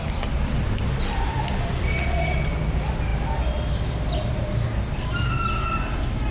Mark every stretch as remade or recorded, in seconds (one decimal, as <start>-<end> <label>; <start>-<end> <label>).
0.0-6.3 recorded